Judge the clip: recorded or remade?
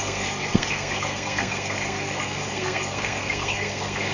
remade